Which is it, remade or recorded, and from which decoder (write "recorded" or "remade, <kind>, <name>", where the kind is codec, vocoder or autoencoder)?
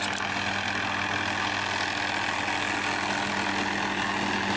recorded